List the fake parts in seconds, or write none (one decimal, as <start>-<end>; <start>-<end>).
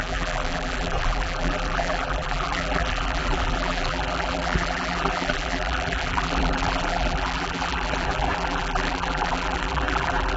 0.0-10.4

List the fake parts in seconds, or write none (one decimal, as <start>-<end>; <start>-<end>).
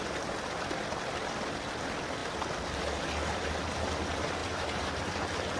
4.4-5.0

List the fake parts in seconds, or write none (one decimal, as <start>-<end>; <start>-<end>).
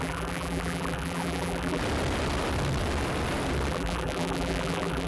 0.0-1.8; 3.7-5.1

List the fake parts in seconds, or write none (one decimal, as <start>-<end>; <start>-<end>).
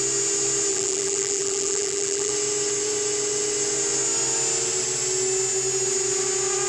0.7-2.3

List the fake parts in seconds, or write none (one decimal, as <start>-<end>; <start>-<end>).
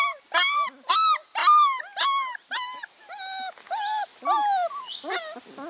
none